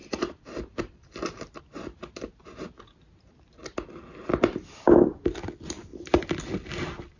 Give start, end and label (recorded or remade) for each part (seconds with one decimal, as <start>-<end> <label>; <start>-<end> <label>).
0.0-1.6 remade; 1.6-5.9 recorded; 5.9-6.4 remade; 6.4-7.2 recorded